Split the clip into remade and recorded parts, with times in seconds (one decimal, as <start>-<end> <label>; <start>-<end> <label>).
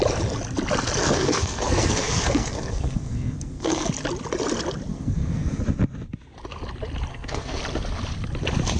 0.0-1.0 recorded; 1.0-3.9 remade; 3.9-4.9 recorded; 4.9-5.6 remade; 5.6-7.1 recorded; 7.1-7.6 remade; 7.6-8.8 recorded